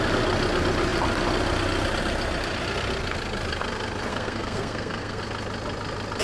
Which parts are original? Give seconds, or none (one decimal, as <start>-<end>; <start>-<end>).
0.0-4.1; 5.2-6.2